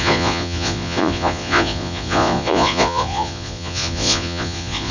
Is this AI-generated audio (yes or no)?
yes